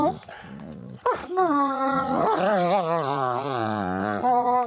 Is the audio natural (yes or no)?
no